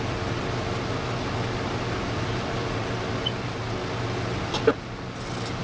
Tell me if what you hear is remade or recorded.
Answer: recorded